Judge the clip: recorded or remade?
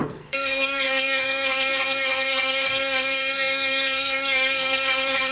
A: remade